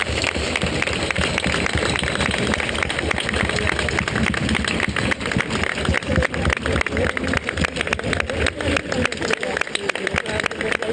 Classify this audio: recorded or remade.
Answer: recorded